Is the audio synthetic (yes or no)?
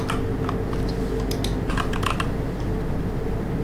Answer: no